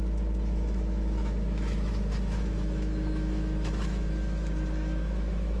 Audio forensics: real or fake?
fake